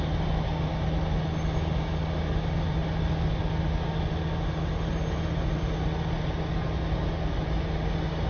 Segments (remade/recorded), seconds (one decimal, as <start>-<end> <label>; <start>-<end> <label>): 0.0-8.3 recorded